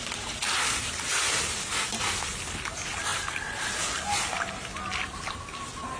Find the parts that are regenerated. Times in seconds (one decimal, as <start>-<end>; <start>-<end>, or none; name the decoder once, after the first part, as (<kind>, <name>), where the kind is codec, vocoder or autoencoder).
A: 3.1-3.7 (vocoder, BigVGAN v2)